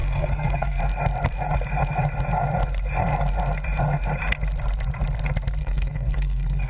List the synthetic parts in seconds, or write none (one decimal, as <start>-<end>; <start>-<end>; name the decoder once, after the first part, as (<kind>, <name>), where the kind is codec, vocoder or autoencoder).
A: 0.0-0.8 (codec, SNAC); 5.6-6.7